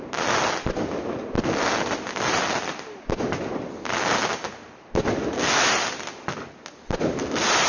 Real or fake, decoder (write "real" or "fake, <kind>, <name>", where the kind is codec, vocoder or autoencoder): real